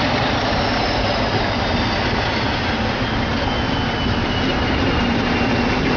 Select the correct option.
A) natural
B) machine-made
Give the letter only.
A